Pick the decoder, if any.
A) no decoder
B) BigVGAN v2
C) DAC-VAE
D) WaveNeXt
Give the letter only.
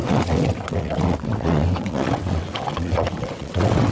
D